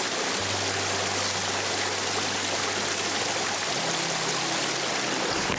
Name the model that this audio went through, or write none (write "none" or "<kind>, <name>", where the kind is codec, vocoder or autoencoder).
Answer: none